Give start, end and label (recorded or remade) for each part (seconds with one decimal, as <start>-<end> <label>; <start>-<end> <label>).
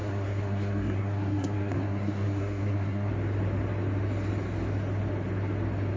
0.0-3.1 remade; 3.1-6.0 recorded